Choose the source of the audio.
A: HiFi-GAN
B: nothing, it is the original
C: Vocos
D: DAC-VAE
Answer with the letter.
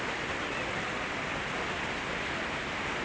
B